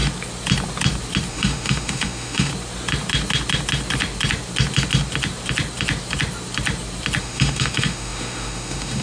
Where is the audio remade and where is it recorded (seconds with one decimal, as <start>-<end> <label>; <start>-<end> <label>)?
0.0-1.3 recorded; 1.3-2.5 remade; 2.5-7.2 recorded; 7.2-9.0 remade